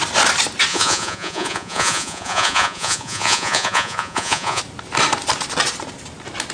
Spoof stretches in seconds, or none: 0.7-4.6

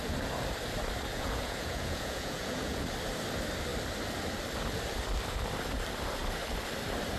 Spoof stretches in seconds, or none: 1.1-2.8

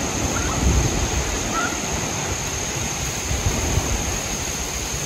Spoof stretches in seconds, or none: 2.5-4.4

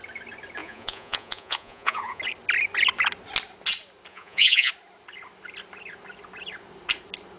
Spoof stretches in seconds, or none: 0.6-2.2; 4.1-4.7

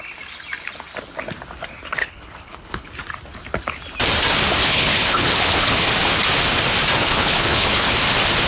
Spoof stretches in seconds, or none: 2.0-2.9; 4.6-5.9; 7.0-7.9

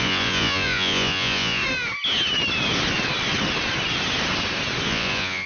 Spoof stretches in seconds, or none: 0.0-1.6; 4.9-5.5

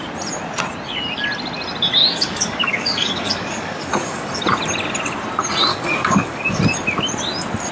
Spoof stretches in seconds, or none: 2.0-4.3; 5.7-6.6

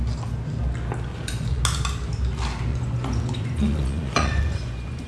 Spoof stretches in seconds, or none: 1.1-1.6; 2.7-5.1